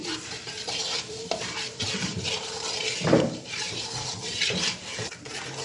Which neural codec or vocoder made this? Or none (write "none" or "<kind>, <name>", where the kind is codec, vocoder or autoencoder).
vocoder, BigVGAN v2